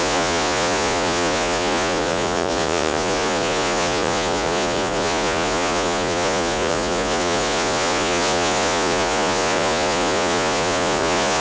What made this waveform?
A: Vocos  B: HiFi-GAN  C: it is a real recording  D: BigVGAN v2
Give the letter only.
A